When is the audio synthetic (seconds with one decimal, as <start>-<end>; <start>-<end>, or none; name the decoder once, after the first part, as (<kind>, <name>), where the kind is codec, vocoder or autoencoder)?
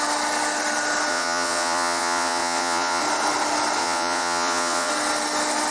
1.1-3.0 (vocoder, Vocos); 3.8-4.9